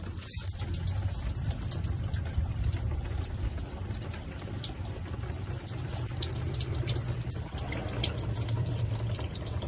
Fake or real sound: fake